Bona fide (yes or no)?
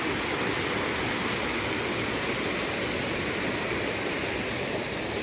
yes